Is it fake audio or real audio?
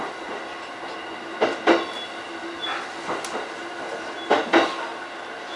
real